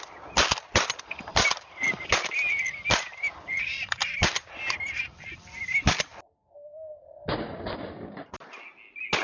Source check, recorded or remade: recorded